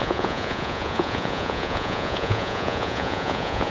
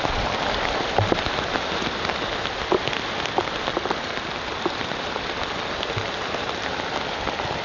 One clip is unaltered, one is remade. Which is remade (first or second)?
first